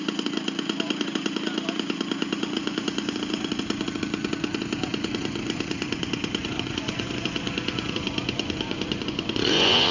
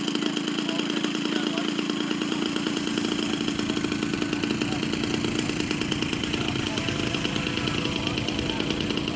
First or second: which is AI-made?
first